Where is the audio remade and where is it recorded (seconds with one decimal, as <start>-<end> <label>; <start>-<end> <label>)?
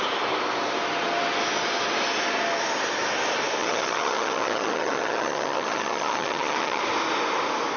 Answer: 0.0-3.6 recorded; 3.6-6.8 remade; 6.8-7.8 recorded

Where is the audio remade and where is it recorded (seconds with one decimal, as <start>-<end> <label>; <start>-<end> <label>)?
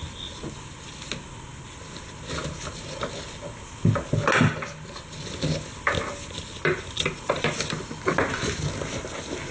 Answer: 0.0-9.5 recorded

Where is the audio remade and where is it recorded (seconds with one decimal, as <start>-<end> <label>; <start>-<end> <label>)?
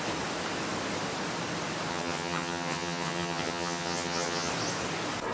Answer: 0.0-1.9 recorded; 1.9-4.5 remade; 4.5-5.3 recorded